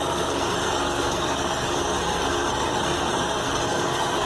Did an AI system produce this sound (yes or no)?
yes